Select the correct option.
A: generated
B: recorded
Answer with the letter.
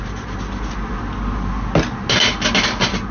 B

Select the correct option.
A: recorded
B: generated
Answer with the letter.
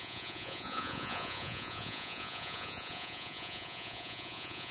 B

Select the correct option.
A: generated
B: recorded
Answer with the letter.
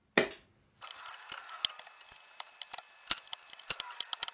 B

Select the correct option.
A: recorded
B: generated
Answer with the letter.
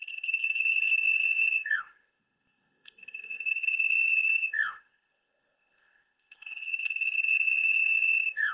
B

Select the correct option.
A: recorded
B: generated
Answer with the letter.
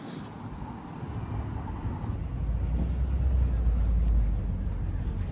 A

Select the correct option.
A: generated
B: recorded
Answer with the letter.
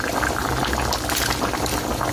B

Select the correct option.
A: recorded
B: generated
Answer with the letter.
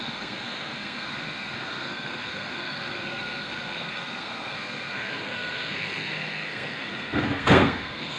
B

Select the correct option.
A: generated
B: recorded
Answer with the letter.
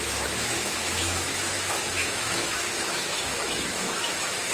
A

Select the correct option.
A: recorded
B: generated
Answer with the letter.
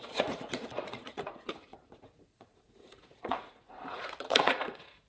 B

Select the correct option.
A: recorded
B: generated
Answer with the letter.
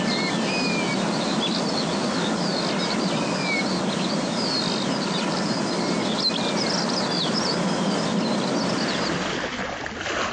A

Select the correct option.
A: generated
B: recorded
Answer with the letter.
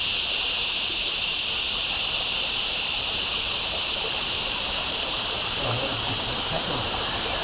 A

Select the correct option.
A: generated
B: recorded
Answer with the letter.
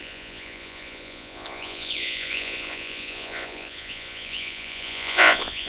A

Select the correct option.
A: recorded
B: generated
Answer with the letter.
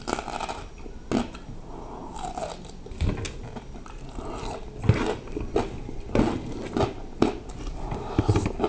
A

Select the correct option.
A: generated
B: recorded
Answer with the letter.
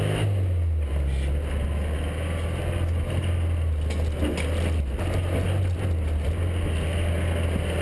B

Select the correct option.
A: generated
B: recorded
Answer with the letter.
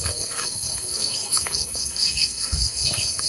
A